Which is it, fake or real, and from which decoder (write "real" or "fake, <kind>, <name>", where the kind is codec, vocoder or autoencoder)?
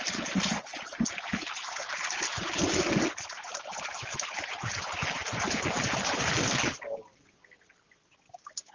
real